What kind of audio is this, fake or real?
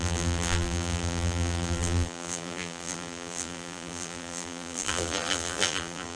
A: fake